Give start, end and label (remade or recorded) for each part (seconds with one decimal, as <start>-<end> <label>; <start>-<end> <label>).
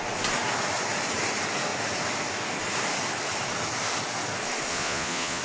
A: 0.0-4.7 recorded; 4.7-5.4 remade